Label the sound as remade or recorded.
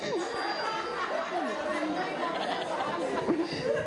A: recorded